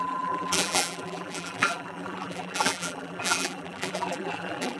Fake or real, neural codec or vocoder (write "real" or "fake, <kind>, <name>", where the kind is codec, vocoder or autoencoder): fake, vocoder, BigVGAN v2